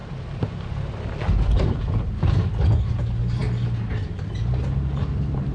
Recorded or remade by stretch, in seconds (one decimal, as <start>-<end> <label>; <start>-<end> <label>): 0.0-5.5 recorded

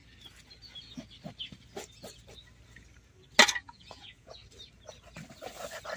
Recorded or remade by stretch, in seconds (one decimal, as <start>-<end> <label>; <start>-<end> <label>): 0.0-3.6 recorded; 3.6-4.4 remade; 4.4-6.0 recorded

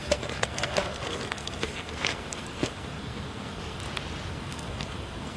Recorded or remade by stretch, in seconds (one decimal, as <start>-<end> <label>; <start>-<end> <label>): 0.0-3.8 remade; 3.8-4.3 recorded; 4.3-5.4 remade